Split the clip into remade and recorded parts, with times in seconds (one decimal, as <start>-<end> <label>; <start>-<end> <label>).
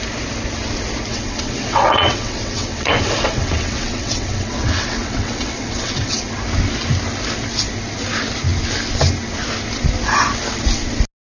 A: 0.0-1.1 recorded; 1.1-6.3 remade; 6.3-11.3 recorded